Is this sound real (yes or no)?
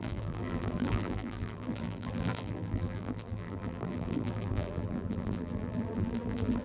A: no